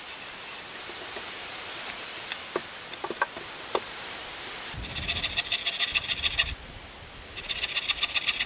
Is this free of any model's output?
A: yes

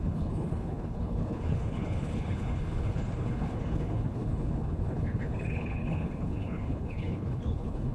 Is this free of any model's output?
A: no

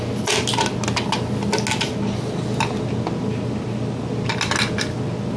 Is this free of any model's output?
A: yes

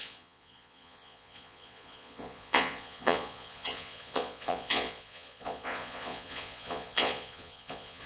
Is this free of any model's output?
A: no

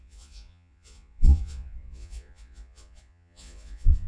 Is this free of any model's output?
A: no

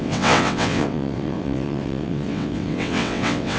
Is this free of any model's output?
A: no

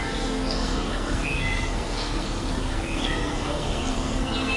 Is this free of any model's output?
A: no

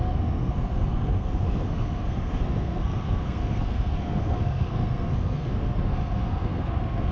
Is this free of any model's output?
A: no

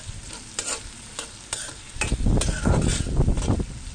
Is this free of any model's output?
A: yes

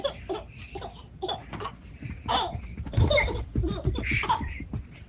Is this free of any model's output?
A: yes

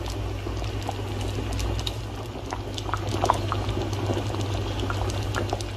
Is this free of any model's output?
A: yes